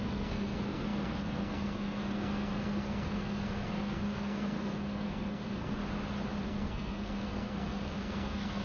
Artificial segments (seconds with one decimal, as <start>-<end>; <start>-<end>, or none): 0.0-5.8; 6.4-8.6